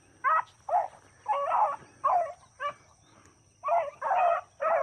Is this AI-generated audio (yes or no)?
no